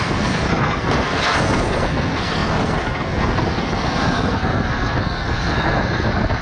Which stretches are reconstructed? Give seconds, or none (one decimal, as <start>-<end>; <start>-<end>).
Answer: 0.0-6.4